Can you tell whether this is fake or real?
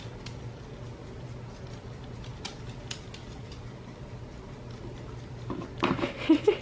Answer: real